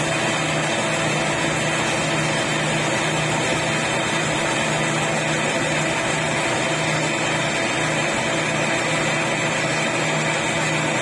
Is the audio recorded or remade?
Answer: recorded